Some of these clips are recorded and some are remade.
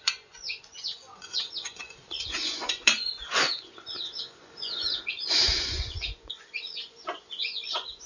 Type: remade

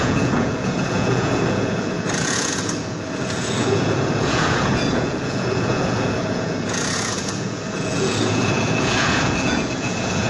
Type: remade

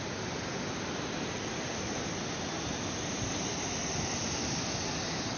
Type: recorded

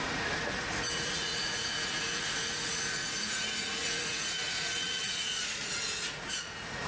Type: remade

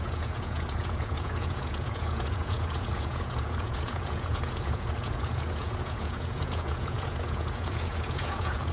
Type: remade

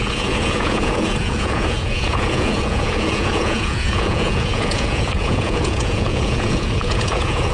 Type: remade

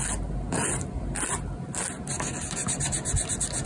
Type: recorded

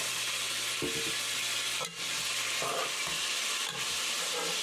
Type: recorded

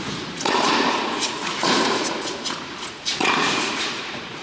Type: remade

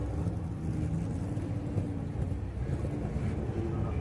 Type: recorded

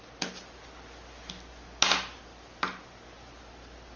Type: recorded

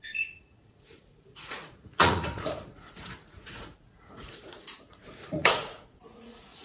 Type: remade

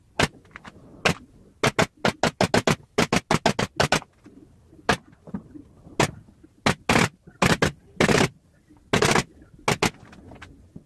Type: recorded